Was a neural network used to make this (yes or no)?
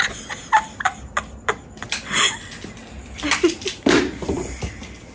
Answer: no